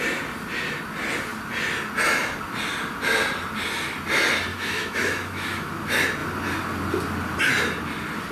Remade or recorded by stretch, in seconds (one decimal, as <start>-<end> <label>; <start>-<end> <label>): 0.0-4.5 recorded; 4.5-5.7 remade; 5.7-8.3 recorded